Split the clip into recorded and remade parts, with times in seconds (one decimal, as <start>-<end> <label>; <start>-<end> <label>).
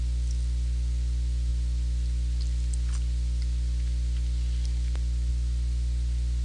0.0-6.4 recorded